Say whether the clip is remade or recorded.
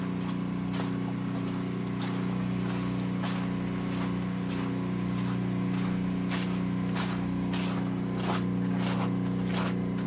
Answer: recorded